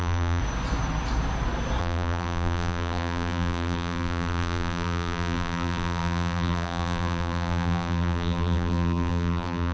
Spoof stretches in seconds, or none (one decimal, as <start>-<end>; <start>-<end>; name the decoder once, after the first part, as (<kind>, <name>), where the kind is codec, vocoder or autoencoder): 0.0-0.4 (vocoder, BigVGAN v2); 1.8-9.7